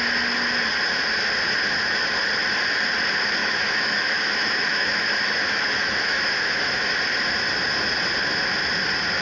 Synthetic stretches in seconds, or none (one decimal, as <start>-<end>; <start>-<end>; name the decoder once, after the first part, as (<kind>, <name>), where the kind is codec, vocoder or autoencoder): 3.4-6.9 (autoencoder, DAC-VAE)